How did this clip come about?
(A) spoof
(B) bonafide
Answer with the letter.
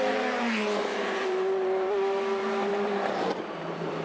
A